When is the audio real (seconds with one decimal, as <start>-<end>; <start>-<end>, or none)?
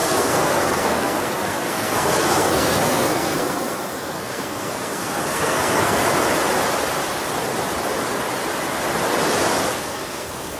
6.0-9.7